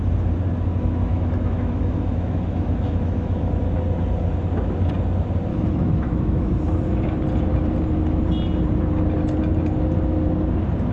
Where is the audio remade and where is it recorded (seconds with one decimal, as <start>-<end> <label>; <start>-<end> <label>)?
0.0-1.1 recorded; 1.1-3.6 remade; 3.6-5.5 recorded; 5.5-6.6 remade; 6.6-10.9 recorded